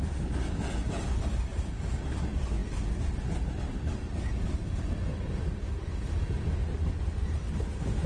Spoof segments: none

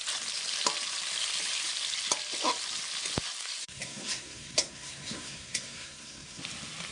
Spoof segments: 3.6-6.4 (codec, SNAC)

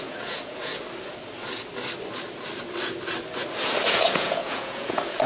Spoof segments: 0.0-0.7 (vocoder, Vocos); 3.9-5.3

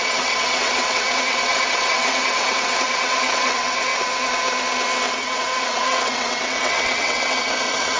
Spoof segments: 0.0-3.9 (vocoder, WaveNeXt); 5.1-8.0

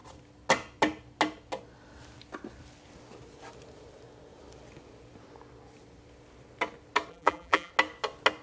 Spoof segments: 7.1-7.7 (vocoder, BigVGAN v2)

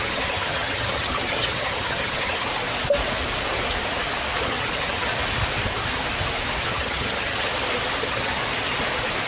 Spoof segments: 0.0-2.5 (vocoder, HiFi-GAN); 4.4-5.1; 6.6-7.5; 8.0-8.4